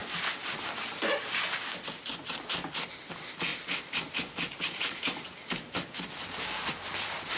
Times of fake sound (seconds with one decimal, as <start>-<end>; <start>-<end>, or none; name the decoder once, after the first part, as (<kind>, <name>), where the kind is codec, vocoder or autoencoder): 3.5-4.1 (vocoder, BigVGAN v2)